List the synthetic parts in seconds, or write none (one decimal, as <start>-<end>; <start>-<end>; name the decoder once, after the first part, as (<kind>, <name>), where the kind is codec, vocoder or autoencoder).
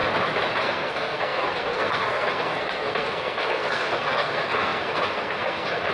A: 0.6-5.9 (codec, SNAC)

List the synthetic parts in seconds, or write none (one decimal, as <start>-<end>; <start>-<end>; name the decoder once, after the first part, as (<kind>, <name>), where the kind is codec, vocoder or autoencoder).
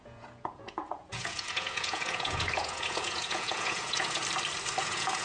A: 0.0-4.2 (vocoder, Vocos); 4.8-5.2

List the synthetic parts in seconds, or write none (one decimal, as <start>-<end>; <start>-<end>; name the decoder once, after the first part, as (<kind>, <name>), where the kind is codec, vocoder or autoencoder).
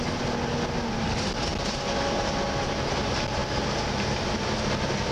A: 3.4-4.3 (vocoder, BigVGAN v2)